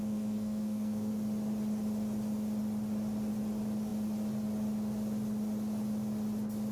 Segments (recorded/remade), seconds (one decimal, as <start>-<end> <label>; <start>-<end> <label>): 0.0-1.1 remade; 1.1-6.7 recorded